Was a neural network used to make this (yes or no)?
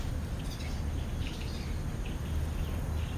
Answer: no